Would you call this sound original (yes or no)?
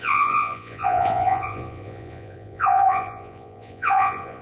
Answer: no